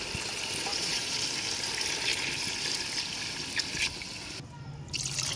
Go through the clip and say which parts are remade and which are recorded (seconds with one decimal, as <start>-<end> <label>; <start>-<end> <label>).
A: 0.0-0.7 recorded; 0.7-1.2 remade; 1.2-5.4 recorded